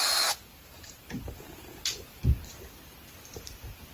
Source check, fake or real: fake